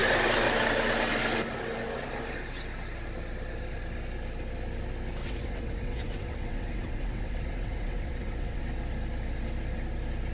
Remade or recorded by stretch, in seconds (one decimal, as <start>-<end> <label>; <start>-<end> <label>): 0.0-5.2 recorded; 5.2-8.6 remade; 8.6-10.3 recorded